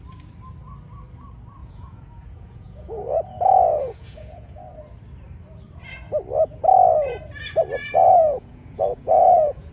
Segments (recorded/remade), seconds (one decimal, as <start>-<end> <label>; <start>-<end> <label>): 0.0-1.6 recorded; 1.6-4.6 remade; 4.6-7.8 recorded; 7.8-9.7 remade